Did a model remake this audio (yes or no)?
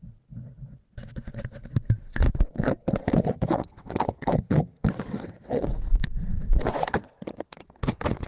yes